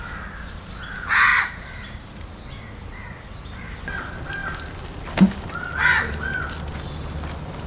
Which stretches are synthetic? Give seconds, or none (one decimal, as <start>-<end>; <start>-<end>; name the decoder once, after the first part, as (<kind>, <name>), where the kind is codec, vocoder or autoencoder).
1.3-3.6 (vocoder, BigVGAN v2)